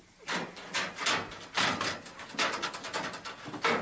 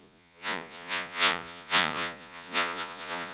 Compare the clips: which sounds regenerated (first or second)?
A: second